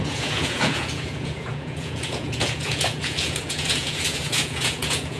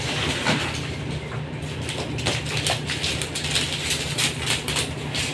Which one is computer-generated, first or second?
first